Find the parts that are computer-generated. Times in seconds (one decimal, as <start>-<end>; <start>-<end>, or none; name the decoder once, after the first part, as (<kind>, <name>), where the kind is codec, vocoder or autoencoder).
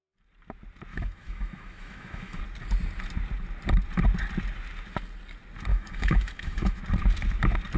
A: 0.9-2.4 (autoencoder, DAC-VAE); 5.7-6.8